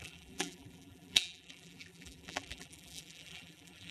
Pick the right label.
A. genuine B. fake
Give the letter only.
B